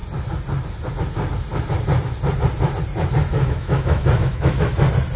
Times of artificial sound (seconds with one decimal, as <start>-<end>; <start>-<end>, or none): 3.3-4.7